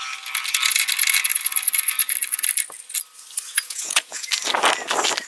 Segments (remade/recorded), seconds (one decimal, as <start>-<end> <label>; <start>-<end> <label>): 0.0-3.5 recorded; 3.5-4.3 remade; 4.3-5.3 recorded